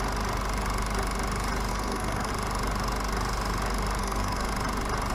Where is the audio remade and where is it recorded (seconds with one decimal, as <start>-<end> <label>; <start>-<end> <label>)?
0.0-1.7 recorded; 1.7-2.3 remade; 2.3-4.0 recorded; 4.0-4.5 remade; 4.5-5.1 recorded